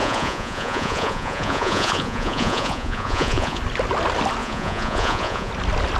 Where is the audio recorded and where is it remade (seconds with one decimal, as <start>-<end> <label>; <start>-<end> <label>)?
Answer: 0.0-3.6 remade; 3.6-4.4 recorded; 4.4-5.5 remade; 5.5-6.0 recorded